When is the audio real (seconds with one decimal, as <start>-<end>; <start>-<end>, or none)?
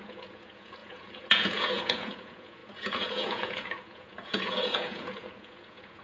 none